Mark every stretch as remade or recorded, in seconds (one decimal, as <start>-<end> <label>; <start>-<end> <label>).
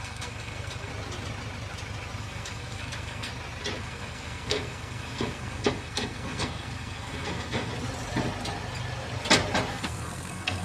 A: 0.0-0.9 remade; 0.9-2.2 recorded; 2.2-3.3 remade; 3.3-3.8 recorded; 3.8-7.7 remade; 7.7-9.7 recorded; 9.7-10.6 remade